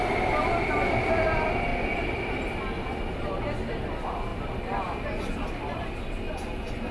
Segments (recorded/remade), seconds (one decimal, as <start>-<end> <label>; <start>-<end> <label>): 0.0-6.9 recorded